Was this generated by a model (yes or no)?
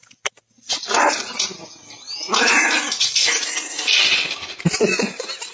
no